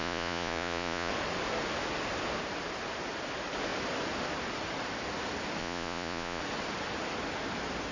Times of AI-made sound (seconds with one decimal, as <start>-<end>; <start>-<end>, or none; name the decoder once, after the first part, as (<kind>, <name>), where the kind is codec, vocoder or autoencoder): 0.0-1.1 (vocoder, Vocos); 5.6-6.4